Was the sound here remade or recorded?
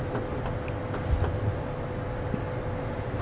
recorded